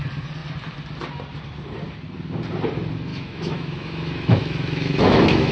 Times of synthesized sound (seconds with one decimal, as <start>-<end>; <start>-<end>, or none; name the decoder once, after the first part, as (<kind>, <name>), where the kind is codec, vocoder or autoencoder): 3.1-5.5 (autoencoder, DAC-VAE)